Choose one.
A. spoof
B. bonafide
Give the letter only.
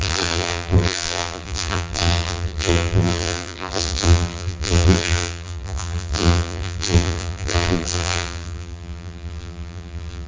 A